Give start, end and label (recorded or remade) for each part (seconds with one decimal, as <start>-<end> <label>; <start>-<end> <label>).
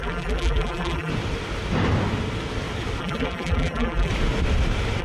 0.0-1.1 remade; 1.1-3.0 recorded; 3.0-4.1 remade; 4.1-5.0 recorded